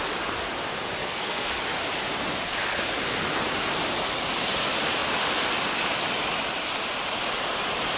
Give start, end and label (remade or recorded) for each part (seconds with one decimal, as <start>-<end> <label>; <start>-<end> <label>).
0.0-1.0 recorded; 1.0-1.5 remade; 1.5-8.0 recorded

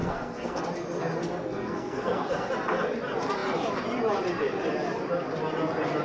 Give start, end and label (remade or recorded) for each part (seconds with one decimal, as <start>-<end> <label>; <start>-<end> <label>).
0.0-0.6 remade; 0.6-1.2 recorded; 1.2-2.5 remade; 2.5-6.0 recorded

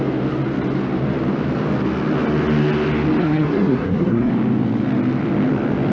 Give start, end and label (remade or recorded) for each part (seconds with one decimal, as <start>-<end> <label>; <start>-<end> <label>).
0.0-3.2 recorded; 3.2-4.3 remade; 4.3-5.9 recorded